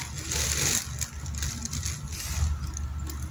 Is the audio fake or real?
real